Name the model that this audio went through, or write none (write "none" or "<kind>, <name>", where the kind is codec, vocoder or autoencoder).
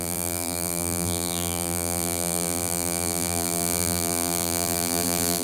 vocoder, BigVGAN v2